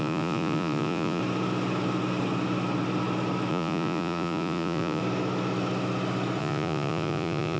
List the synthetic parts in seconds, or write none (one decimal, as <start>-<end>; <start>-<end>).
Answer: 0.0-1.2; 3.5-5.0; 6.4-7.6